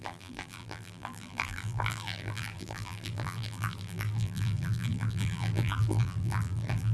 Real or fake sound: fake